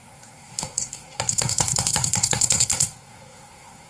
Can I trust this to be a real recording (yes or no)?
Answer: no